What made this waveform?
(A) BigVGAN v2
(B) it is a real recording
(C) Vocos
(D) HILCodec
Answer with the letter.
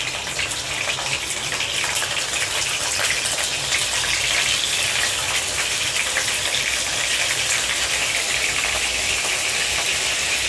A